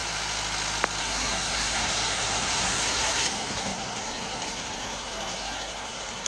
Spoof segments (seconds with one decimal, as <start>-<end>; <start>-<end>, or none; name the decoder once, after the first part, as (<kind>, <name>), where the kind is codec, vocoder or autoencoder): 1.0-6.3 (codec, SNAC)